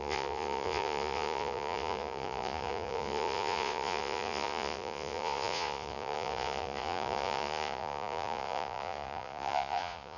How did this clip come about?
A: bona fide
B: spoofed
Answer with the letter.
B